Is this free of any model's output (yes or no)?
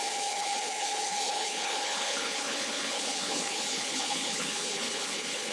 no